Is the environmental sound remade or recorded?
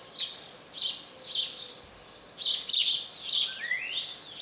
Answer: recorded